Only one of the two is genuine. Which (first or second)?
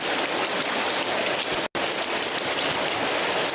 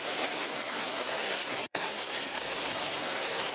first